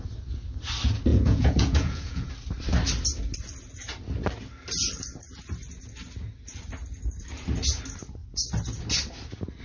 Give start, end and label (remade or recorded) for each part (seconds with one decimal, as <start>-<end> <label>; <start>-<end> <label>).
0.0-1.1 recorded; 1.1-2.3 remade; 2.3-9.6 recorded